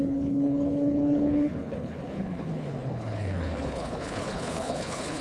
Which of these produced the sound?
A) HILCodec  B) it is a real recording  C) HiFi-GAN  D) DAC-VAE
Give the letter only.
A